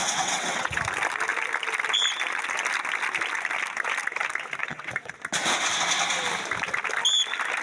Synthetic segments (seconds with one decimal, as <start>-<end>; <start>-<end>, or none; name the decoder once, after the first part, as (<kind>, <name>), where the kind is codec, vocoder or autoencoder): 0.0-0.8 (vocoder, WaveNeXt); 4.6-5.1